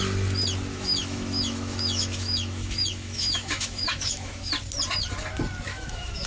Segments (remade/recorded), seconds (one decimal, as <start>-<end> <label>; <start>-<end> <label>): 0.0-0.7 recorded; 0.7-4.5 remade; 4.5-5.7 recorded; 5.7-6.3 remade